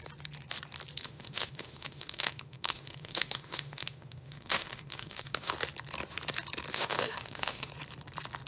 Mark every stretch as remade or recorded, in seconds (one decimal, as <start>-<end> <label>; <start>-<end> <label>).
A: 0.0-1.0 recorded; 1.0-5.5 remade; 5.5-6.7 recorded; 6.7-7.7 remade; 7.7-8.5 recorded